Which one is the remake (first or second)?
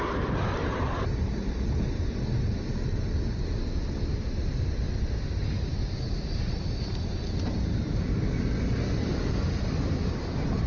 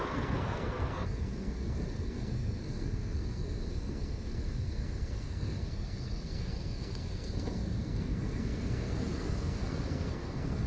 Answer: second